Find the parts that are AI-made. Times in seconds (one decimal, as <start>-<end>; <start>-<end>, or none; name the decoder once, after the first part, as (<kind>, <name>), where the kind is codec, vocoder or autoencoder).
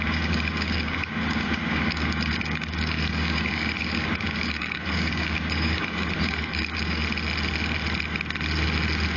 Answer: 0.0-7.0 (codec, DAC)